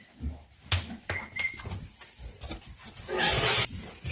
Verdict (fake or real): real